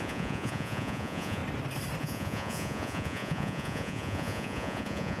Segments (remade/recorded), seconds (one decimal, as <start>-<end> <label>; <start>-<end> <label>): 0.0-1.4 remade; 1.4-2.0 recorded; 2.0-5.2 remade